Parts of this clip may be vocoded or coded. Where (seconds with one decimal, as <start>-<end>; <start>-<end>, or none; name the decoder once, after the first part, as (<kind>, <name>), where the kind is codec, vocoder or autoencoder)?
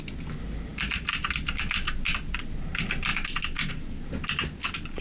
none